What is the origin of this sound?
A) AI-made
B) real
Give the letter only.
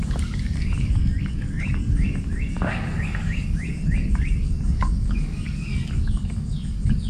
A